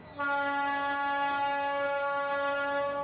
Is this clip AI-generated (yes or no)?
no